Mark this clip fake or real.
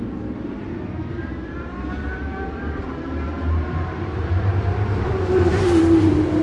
fake